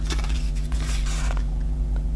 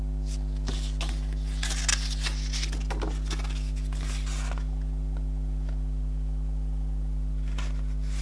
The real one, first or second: second